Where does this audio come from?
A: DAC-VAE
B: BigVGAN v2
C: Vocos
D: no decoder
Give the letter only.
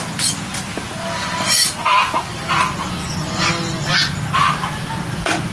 D